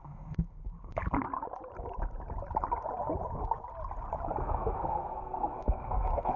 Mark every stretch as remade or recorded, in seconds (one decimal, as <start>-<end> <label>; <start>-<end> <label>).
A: 0.0-0.6 remade; 0.6-4.4 recorded; 4.4-6.4 remade